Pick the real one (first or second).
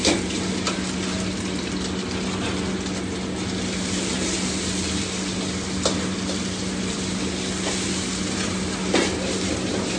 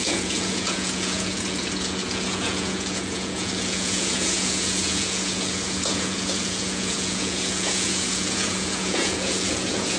first